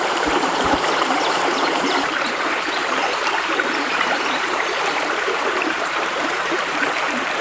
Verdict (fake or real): fake